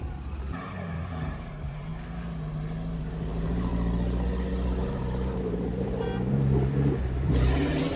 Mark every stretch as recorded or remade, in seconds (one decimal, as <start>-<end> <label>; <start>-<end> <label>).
0.0-1.9 remade; 1.9-3.0 recorded; 3.0-3.7 remade; 3.7-4.8 recorded; 4.8-8.0 remade